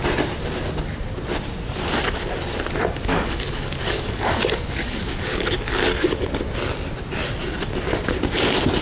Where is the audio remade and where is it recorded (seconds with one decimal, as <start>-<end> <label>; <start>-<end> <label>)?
0.0-3.1 recorded; 3.1-6.2 remade; 6.2-8.8 recorded